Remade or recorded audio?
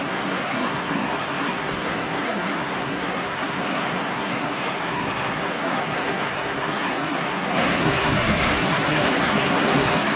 remade